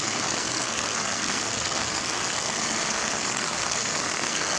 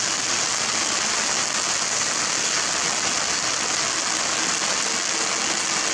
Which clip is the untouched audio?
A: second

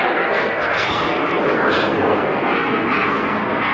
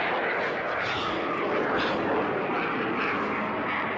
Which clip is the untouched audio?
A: second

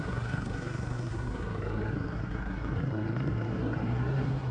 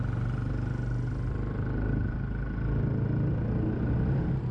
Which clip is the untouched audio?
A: second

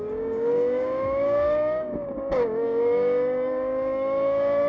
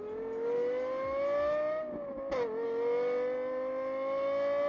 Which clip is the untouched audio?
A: second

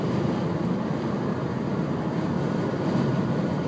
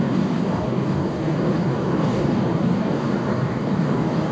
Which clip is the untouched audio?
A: first